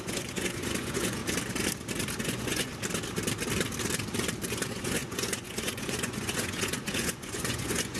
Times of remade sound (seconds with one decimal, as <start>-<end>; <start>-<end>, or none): 0.0-1.2; 2.2-2.7; 4.5-8.0